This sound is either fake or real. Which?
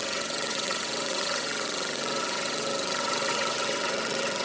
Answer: fake